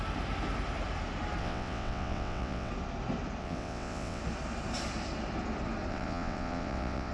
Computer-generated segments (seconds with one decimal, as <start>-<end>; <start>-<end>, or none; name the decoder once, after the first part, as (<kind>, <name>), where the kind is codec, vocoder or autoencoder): 1.4-2.7 (vocoder, WaveNeXt); 3.4-4.2; 5.9-7.1